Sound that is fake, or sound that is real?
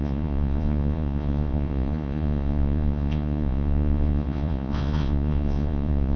fake